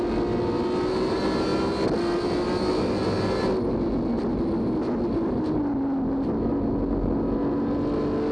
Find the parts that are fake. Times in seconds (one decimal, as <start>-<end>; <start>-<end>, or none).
none